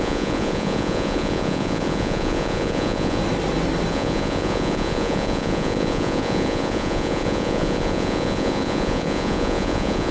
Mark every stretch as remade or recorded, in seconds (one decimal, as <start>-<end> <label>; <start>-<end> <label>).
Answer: 0.0-3.2 remade; 3.2-3.9 recorded; 3.9-10.1 remade